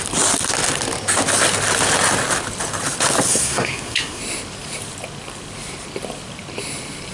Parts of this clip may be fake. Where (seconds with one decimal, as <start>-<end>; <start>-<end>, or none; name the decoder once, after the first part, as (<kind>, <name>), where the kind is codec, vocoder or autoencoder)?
3.3-4.2 (codec, SNAC)